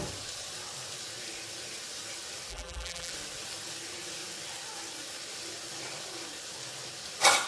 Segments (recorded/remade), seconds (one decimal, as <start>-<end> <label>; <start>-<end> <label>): 0.0-2.5 recorded; 2.5-3.1 remade; 3.1-7.5 recorded